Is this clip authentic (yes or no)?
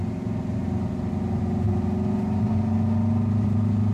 yes